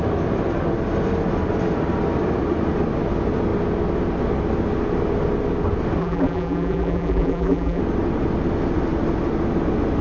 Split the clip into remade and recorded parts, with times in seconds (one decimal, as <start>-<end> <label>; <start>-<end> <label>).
0.0-6.0 recorded; 6.0-7.8 remade; 7.8-10.0 recorded